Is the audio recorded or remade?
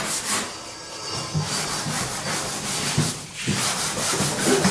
recorded